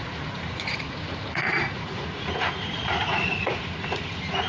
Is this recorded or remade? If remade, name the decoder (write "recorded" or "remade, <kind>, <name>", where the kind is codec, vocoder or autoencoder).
remade, vocoder, Vocos